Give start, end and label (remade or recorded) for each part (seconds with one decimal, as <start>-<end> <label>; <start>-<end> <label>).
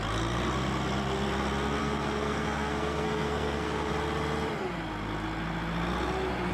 0.0-1.8 recorded; 1.8-3.9 remade; 3.9-6.5 recorded